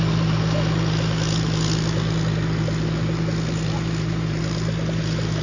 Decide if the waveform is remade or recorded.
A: recorded